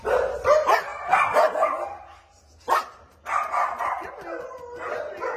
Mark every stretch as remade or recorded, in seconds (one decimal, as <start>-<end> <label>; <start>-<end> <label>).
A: 0.0-5.4 recorded